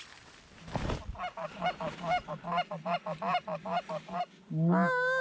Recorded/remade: recorded